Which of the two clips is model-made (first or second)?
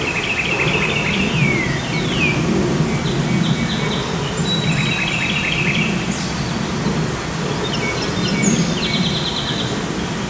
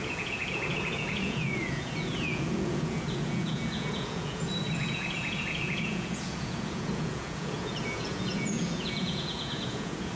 second